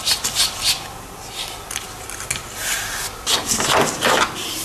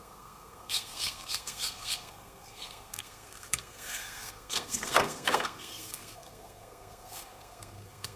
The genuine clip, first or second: first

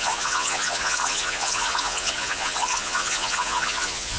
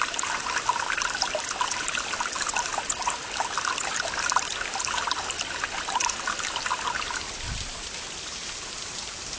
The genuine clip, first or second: second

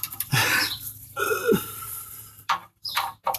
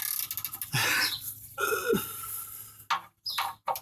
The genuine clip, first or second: second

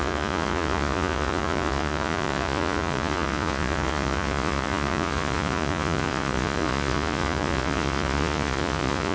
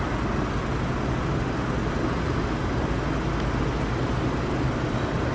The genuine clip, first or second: second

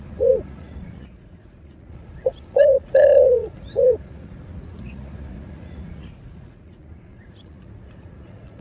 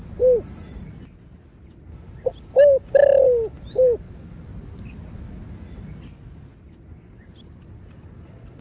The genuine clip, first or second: second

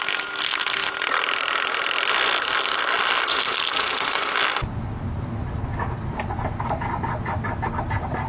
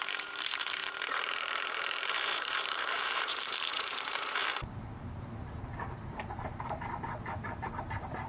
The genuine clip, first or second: first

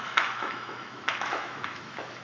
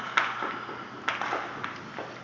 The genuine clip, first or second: second